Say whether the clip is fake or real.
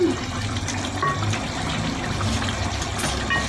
real